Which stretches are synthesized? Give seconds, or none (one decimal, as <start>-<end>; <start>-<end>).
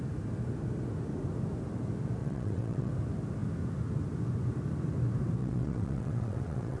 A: 2.2-2.9; 5.4-6.8